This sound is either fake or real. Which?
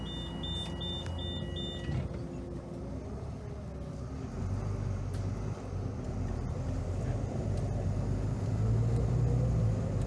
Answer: real